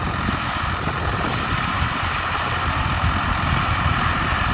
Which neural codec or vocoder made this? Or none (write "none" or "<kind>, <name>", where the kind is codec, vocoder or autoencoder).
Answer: none